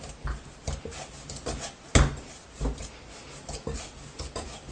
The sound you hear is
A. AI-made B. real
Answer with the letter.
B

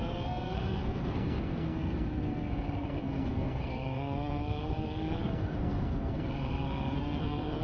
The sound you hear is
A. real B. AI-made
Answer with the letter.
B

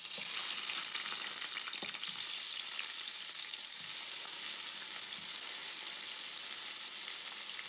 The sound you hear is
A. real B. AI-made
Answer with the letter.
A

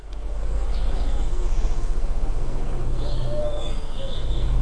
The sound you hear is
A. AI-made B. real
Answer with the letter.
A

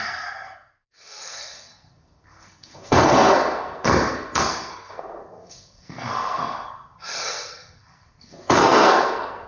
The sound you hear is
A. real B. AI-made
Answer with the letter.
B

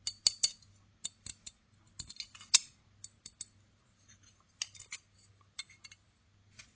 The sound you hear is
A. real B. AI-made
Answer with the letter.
A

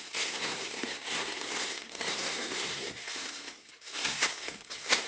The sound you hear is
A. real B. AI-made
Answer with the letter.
B